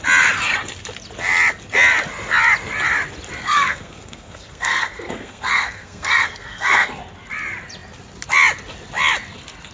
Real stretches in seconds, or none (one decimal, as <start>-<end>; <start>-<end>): 0.0-3.4; 6.9-9.7